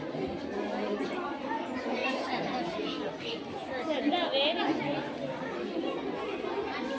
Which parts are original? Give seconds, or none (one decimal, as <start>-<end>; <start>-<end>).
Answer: 0.0-7.0